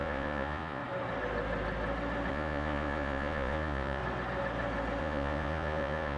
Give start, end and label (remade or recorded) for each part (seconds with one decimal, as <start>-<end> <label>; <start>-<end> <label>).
0.0-0.8 remade; 0.8-2.3 recorded; 2.3-4.0 remade; 4.0-5.0 recorded; 5.0-6.2 remade